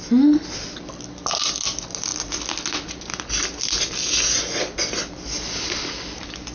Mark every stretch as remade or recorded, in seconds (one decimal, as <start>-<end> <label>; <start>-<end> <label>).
0.0-6.5 recorded